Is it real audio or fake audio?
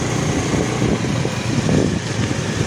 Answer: real